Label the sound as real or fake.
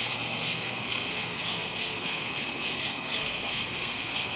fake